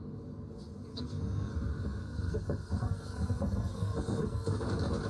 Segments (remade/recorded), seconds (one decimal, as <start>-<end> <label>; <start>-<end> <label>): 0.0-0.9 recorded; 0.9-1.5 remade; 1.5-2.0 recorded; 2.0-4.6 remade; 4.6-5.1 recorded